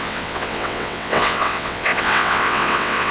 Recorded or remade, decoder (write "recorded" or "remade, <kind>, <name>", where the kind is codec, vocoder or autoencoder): remade, vocoder, WaveNeXt